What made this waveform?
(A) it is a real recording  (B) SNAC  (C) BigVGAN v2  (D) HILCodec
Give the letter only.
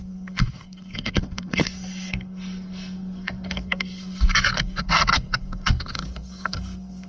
B